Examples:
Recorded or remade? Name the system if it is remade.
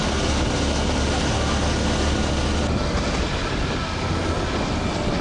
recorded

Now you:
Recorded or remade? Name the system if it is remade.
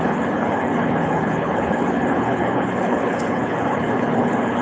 remade, codec, HILCodec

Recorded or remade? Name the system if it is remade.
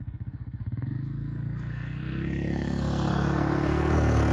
remade, codec, SNAC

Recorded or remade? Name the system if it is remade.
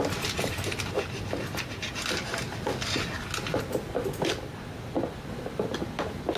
recorded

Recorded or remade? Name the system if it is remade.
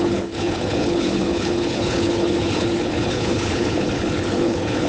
remade, codec, HILCodec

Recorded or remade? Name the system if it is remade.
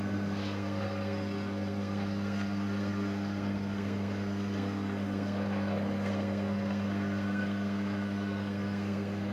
remade, codec, SNAC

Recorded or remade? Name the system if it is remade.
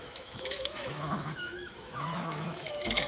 remade, autoencoder, DAC-VAE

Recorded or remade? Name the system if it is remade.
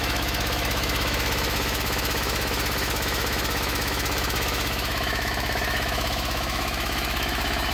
remade, autoencoder, DAC-VAE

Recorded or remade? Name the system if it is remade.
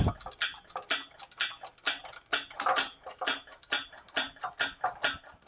recorded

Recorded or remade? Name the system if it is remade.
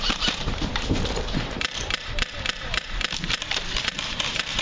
remade, vocoder, BigVGAN v2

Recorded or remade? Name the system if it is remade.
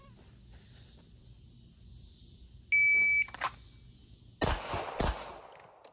recorded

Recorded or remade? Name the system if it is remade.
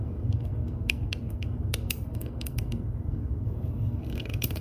remade, codec, SNAC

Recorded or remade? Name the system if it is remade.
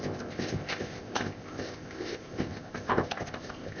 remade, codec, ZipCodec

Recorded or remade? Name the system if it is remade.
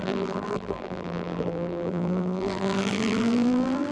remade, vocoder, BigVGAN v2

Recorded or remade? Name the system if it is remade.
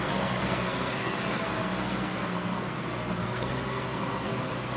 remade, codec, SNAC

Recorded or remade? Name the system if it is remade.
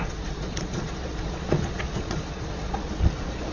remade, vocoder, Vocos